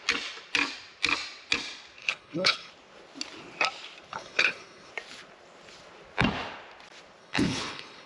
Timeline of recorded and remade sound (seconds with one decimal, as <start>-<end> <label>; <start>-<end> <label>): 0.0-2.0 recorded; 2.0-2.7 remade; 2.7-4.1 recorded; 4.1-4.9 remade; 4.9-7.2 recorded; 7.2-8.1 remade

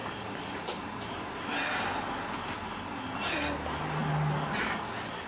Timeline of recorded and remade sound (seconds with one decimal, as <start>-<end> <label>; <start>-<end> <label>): 0.0-5.3 recorded

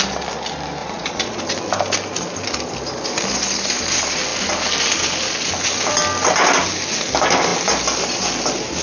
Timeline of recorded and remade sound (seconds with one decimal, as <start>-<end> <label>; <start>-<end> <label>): 0.0-0.8 recorded; 0.8-1.4 remade; 1.4-8.8 recorded

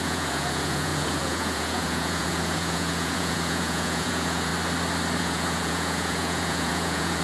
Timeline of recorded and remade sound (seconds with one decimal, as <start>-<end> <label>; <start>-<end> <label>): 0.0-4.5 remade; 4.5-5.2 recorded; 5.2-7.2 remade

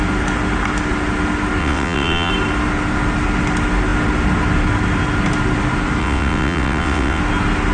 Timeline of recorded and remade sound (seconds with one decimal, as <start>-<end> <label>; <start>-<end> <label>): 0.0-1.6 recorded; 1.6-2.3 remade; 2.3-6.0 recorded; 6.0-7.2 remade; 7.2-7.7 recorded

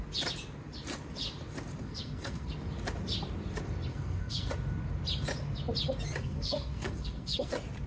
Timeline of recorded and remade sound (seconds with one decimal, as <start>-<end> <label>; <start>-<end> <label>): 0.0-1.8 recorded; 1.8-2.5 remade; 2.5-3.9 recorded; 3.9-4.5 remade; 4.5-6.2 recorded; 6.2-7.5 remade; 7.5-7.9 recorded